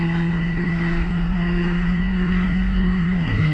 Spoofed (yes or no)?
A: yes